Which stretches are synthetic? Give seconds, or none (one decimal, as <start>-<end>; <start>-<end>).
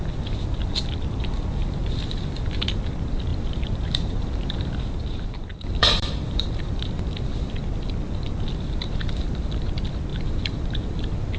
1.6-2.7; 3.3-6.6; 10.1-11.4